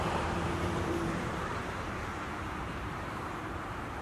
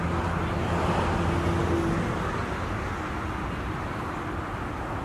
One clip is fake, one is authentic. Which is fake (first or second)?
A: first